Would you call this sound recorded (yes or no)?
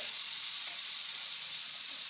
no